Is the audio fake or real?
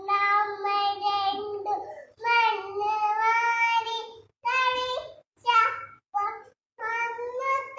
real